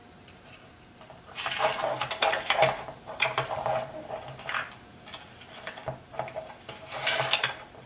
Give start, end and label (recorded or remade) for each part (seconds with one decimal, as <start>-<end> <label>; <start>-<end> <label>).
0.0-4.7 remade; 4.7-7.9 recorded